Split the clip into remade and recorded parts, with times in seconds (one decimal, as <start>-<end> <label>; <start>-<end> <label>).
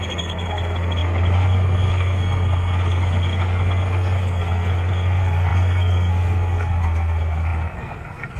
0.0-8.4 remade